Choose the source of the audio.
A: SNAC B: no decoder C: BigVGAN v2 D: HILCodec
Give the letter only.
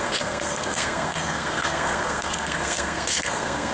A